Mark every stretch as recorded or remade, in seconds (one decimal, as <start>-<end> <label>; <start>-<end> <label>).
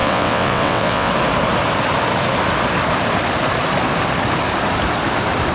0.0-1.1 remade; 1.1-5.5 recorded